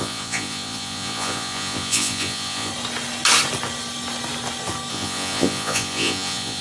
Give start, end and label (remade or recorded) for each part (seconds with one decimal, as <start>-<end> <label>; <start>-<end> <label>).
0.0-2.7 remade; 2.7-4.9 recorded; 4.9-6.6 remade